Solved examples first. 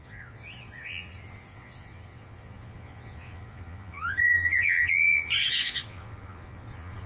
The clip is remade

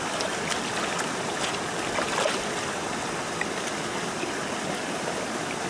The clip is recorded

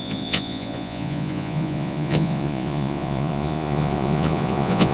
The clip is remade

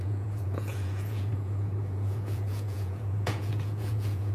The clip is remade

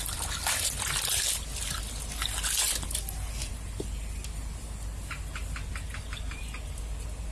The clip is recorded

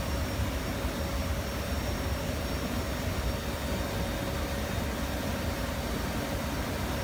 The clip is recorded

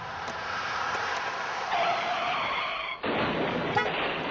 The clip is recorded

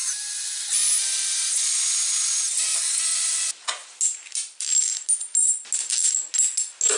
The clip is recorded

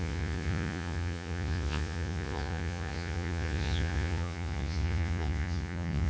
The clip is remade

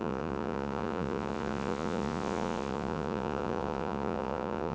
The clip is remade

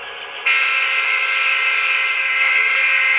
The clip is recorded